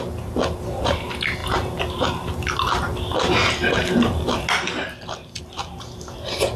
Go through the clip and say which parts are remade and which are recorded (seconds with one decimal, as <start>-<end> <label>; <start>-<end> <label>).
0.0-6.6 recorded